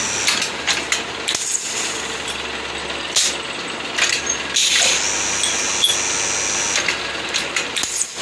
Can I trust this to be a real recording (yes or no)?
yes